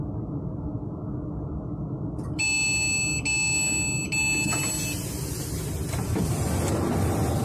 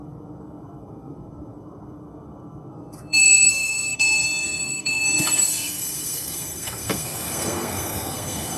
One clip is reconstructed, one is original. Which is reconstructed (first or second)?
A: second